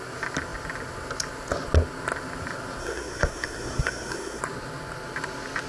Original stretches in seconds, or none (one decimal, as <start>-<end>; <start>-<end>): 0.0-2.8; 4.4-5.7